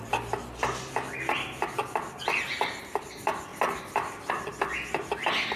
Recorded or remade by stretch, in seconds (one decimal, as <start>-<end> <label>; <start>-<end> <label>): 0.0-5.6 recorded